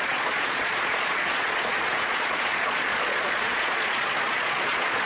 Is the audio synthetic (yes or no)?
yes